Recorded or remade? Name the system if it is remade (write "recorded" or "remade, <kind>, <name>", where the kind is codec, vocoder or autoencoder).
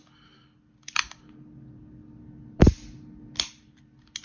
recorded